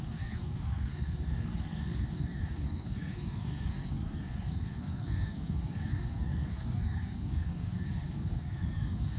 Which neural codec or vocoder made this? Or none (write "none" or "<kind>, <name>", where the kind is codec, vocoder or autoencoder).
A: codec, SNAC